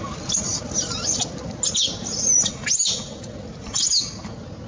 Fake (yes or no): no